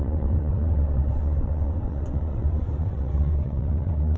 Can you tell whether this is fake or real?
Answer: fake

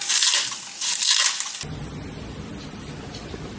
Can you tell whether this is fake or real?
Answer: real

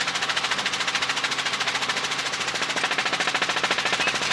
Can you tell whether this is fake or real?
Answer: real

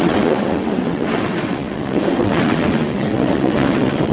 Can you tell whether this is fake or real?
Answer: fake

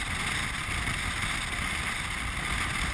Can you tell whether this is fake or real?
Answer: real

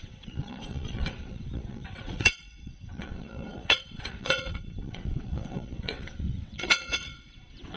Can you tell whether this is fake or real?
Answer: fake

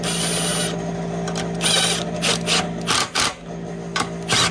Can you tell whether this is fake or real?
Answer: real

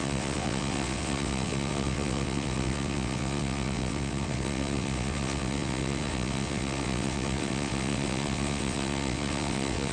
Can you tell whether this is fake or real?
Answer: fake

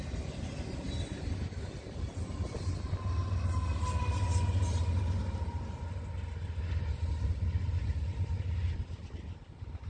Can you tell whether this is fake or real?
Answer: real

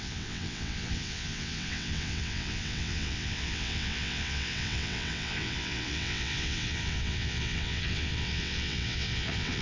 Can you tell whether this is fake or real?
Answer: fake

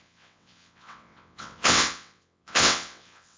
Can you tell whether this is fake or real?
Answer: fake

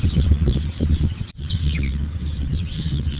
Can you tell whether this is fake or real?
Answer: fake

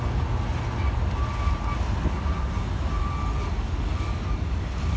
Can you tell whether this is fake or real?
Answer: real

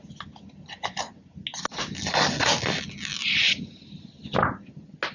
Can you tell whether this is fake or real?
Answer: real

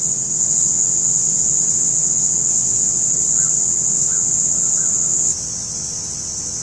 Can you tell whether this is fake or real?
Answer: fake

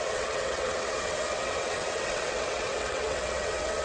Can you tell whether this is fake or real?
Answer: fake